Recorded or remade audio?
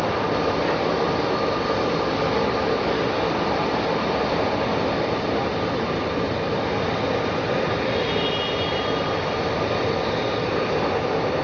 recorded